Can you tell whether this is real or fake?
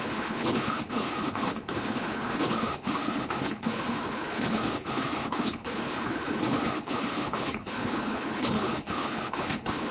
fake